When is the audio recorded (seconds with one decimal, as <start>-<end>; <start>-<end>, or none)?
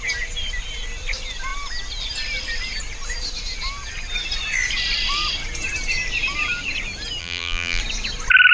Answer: 0.0-7.2; 7.8-8.5